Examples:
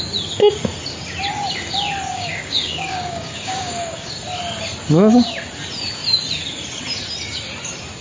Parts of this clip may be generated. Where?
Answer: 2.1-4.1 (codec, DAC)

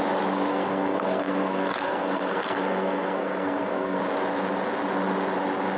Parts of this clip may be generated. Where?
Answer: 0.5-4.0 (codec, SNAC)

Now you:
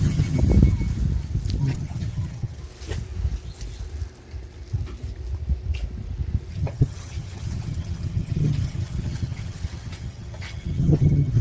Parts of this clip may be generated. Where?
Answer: 0.0-0.4 (vocoder, HiFi-GAN); 1.6-2.6; 6.5-11.4